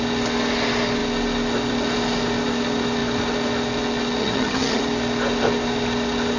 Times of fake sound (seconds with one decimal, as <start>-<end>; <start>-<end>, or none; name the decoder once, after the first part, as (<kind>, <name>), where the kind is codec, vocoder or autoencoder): 4.2-4.8 (vocoder, HiFi-GAN)